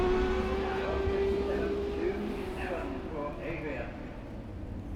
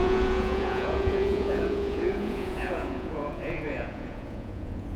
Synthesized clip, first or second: second